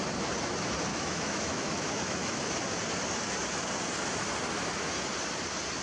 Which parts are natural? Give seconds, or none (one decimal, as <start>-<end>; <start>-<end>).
0.0-0.9; 2.5-5.8